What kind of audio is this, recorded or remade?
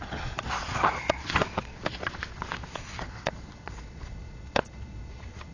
remade